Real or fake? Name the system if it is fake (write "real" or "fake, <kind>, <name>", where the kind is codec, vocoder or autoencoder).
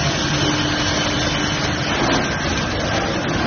real